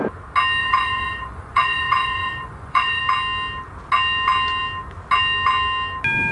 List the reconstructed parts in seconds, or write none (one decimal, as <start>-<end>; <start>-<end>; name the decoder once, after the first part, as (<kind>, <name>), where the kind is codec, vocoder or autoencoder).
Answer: 0.6-3.0 (vocoder, Vocos)